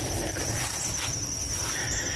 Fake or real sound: real